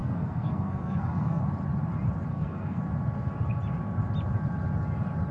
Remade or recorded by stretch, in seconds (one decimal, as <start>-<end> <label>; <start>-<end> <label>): 0.0-1.4 remade; 1.4-2.3 recorded; 2.3-2.8 remade; 2.8-5.3 recorded